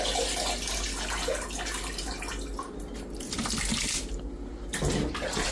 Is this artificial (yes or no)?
no